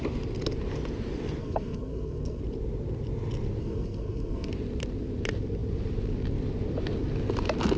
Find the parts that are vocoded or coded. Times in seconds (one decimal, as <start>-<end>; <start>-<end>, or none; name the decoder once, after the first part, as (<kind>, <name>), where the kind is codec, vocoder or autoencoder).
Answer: 1.4-2.4 (codec, SNAC); 3.6-4.5